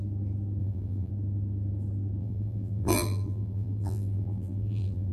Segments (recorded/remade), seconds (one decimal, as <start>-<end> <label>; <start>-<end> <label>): 0.0-0.6 recorded; 0.6-1.1 remade; 1.1-2.2 recorded; 2.2-5.1 remade